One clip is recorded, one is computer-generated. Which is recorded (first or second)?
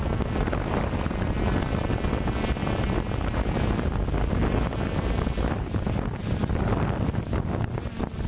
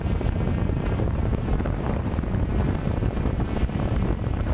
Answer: first